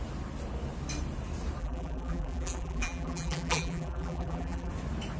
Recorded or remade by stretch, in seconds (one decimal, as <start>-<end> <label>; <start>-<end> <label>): 0.0-1.6 recorded; 1.6-4.7 remade; 4.7-5.2 recorded